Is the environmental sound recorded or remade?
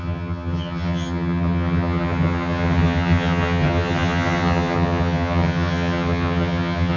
remade